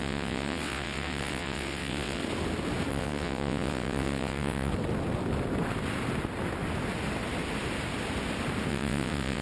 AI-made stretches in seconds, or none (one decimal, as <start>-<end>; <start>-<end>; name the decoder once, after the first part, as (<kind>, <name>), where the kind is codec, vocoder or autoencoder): 0.0-2.2 (vocoder, WaveNeXt); 2.9-4.7; 8.7-9.4